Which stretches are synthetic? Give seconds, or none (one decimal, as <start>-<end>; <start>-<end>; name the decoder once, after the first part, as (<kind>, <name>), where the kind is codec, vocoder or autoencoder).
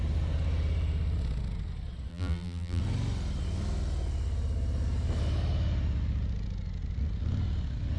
2.1-2.8 (vocoder, BigVGAN v2)